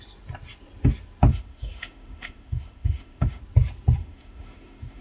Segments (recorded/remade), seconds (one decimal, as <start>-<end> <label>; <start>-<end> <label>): 0.0-1.3 recorded; 1.3-3.4 remade; 3.4-4.0 recorded; 4.0-5.0 remade